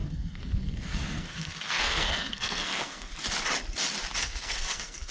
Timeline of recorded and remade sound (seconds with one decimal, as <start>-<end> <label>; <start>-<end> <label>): 0.0-3.1 remade; 3.1-4.2 recorded; 4.2-5.1 remade